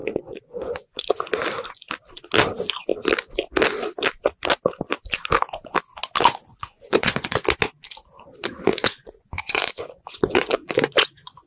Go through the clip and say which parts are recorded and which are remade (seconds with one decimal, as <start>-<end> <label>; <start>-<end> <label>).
0.0-1.0 remade; 1.0-6.5 recorded; 6.5-7.4 remade; 7.4-8.7 recorded; 8.7-11.5 remade